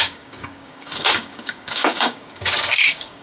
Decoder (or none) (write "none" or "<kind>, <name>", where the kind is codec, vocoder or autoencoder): codec, DAC